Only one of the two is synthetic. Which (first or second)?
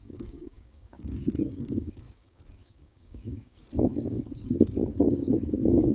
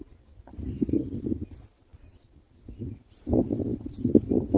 first